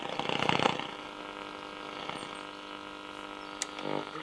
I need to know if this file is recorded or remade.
recorded